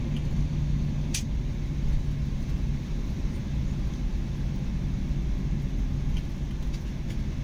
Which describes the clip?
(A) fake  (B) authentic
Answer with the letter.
B